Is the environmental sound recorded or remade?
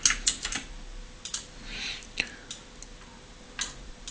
recorded